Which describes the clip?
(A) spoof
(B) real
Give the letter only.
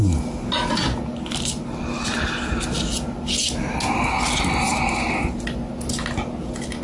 B